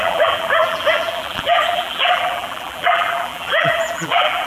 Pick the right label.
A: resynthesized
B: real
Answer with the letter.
A